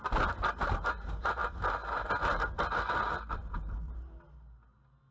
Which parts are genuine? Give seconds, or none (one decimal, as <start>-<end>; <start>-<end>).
0.0-5.1